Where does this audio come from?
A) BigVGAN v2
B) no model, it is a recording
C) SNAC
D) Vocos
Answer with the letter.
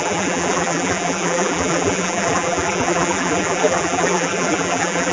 A